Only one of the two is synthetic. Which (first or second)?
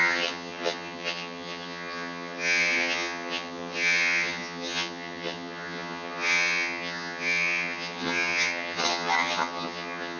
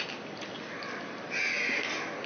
first